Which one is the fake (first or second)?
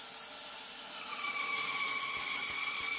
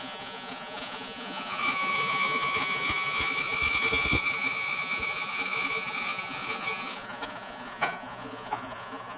second